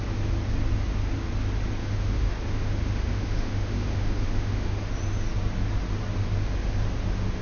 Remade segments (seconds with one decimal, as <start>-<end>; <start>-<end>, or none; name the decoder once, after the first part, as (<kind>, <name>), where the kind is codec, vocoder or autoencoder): 1.8-4.9 (autoencoder, DAC-VAE)